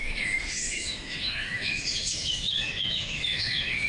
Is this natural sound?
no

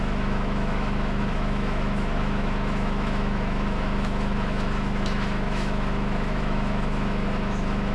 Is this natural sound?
no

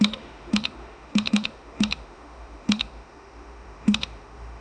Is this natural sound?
no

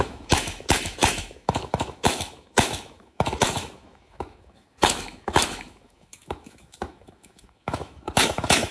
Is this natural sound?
no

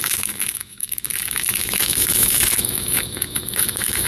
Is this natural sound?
no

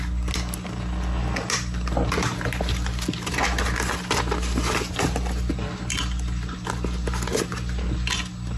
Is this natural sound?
yes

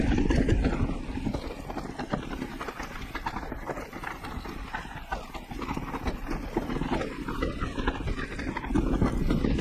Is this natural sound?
yes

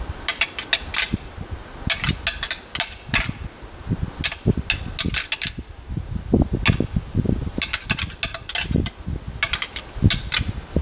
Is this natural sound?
yes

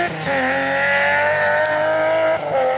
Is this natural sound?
yes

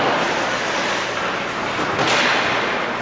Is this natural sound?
yes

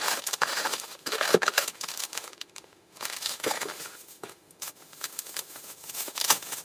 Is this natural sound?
no